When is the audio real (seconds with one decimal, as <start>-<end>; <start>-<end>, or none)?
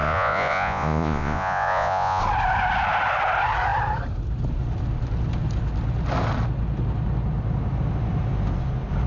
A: 2.2-9.1